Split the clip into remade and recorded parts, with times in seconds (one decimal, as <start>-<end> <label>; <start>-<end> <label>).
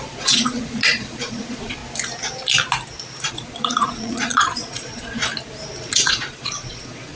0.0-1.8 remade; 1.8-3.3 recorded; 3.3-5.2 remade; 5.2-5.8 recorded; 5.8-7.2 remade